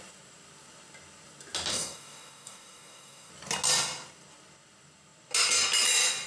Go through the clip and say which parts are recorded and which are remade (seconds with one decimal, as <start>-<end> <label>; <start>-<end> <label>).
0.0-1.7 recorded; 1.7-3.3 remade; 3.3-6.3 recorded